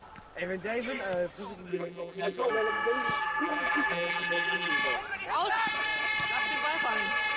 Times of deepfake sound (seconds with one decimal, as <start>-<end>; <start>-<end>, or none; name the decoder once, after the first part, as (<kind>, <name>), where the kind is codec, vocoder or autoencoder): 1.7-2.5 (vocoder, BigVGAN v2); 3.2-4.7